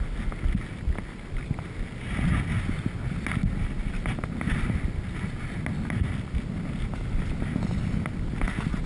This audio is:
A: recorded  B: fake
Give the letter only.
A